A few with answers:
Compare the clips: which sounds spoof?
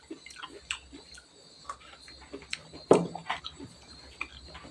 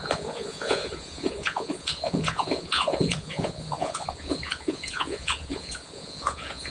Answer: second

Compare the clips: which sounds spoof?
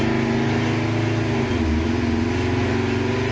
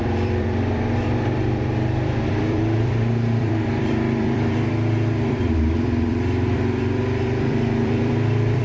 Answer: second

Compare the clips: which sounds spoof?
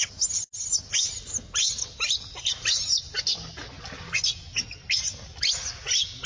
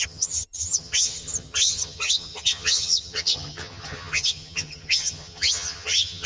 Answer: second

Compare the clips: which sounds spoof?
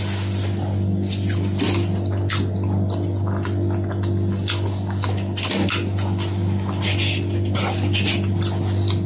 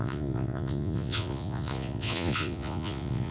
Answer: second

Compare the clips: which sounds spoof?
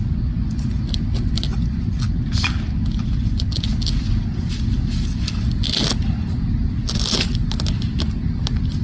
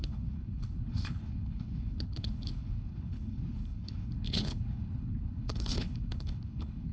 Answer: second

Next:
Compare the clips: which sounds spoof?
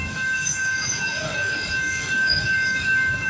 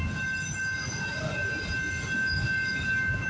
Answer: first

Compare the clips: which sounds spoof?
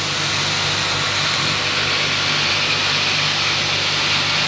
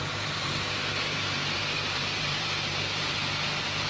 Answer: second